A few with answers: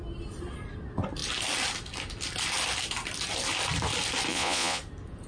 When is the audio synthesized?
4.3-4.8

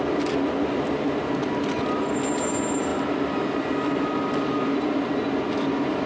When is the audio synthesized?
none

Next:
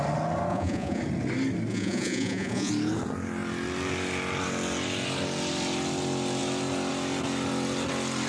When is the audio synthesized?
0.5-1.0; 1.7-2.7